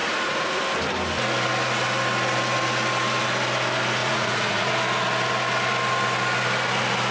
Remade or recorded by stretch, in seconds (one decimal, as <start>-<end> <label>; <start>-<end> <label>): 0.0-0.6 remade; 0.6-4.0 recorded; 4.0-4.7 remade; 4.7-7.1 recorded